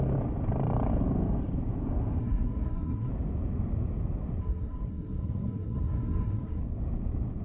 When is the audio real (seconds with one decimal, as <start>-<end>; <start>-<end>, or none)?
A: 0.0-2.2; 3.1-4.4; 6.6-7.4